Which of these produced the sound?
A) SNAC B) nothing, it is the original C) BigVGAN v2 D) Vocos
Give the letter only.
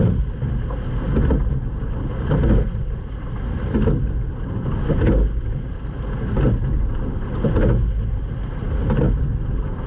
B